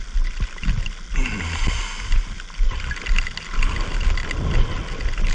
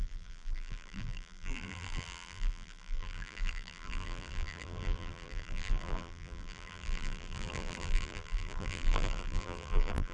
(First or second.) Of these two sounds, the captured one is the first